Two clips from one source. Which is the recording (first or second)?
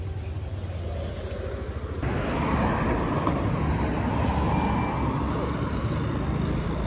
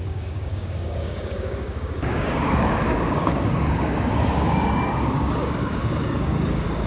first